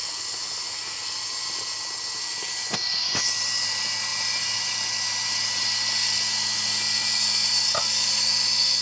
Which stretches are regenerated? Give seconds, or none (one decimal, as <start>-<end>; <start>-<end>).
none